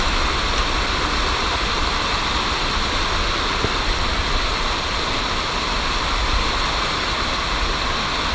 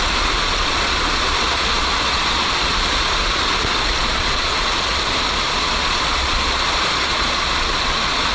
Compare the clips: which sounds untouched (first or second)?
first